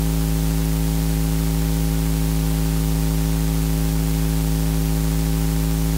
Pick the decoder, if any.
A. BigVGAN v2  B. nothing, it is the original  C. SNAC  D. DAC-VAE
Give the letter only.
B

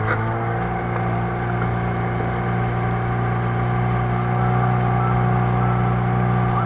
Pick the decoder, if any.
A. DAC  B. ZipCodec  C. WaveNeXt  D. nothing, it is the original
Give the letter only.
D